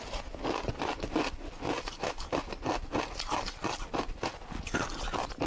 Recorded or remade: recorded